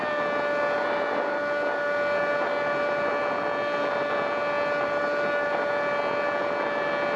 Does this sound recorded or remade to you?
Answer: recorded